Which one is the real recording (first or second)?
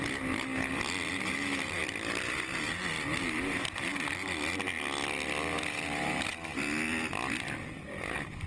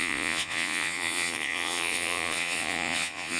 first